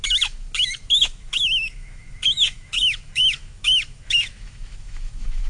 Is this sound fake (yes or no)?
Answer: yes